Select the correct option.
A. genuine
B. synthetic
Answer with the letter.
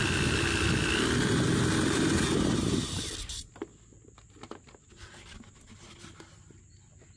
A